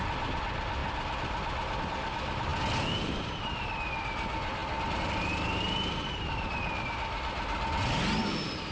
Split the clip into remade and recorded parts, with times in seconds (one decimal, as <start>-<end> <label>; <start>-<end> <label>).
0.0-8.7 recorded

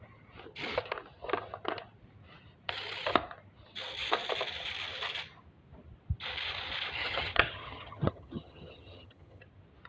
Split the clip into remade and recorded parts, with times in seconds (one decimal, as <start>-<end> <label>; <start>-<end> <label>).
0.0-7.0 recorded; 7.0-9.4 remade; 9.4-9.9 recorded

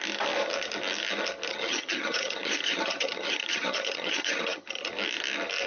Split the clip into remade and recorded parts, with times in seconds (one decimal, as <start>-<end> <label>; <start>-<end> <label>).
0.0-1.5 recorded; 1.5-4.9 remade; 4.9-5.7 recorded

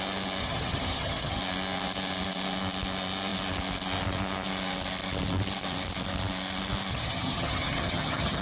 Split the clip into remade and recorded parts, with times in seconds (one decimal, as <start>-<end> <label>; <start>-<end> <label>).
0.0-0.4 recorded; 0.4-1.4 remade; 1.4-6.9 recorded; 6.9-8.4 remade

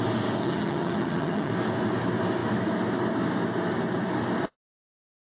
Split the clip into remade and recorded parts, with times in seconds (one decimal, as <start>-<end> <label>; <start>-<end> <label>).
0.0-0.4 recorded; 0.4-1.5 remade; 1.5-5.3 recorded

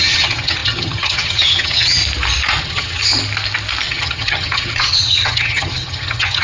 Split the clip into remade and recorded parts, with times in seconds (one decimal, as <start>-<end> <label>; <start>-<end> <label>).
0.0-2.0 remade; 2.0-2.6 recorded; 2.6-3.0 remade; 3.0-3.9 recorded; 3.9-6.4 remade